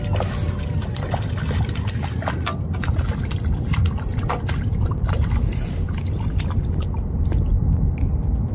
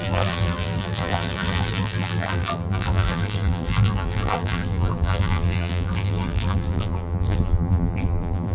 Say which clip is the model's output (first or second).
second